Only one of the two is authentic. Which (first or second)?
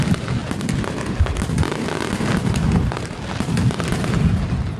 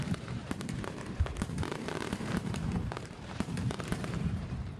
first